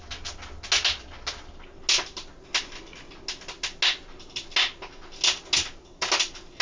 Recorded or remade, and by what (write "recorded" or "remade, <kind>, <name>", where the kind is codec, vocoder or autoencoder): recorded